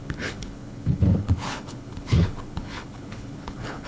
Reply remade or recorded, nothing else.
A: remade